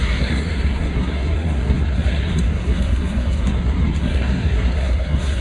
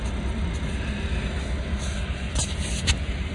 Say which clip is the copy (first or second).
first